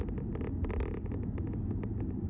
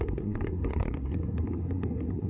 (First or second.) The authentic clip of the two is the first